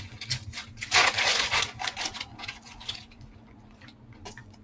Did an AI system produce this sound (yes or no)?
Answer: yes